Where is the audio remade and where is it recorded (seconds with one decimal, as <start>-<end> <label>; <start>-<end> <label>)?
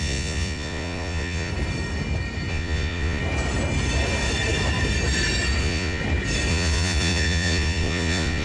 0.0-1.5 remade; 1.5-2.5 recorded; 2.5-3.2 remade; 3.2-5.6 recorded; 5.6-6.0 remade; 6.0-6.5 recorded; 6.5-8.4 remade